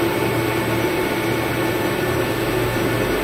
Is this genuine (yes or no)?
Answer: yes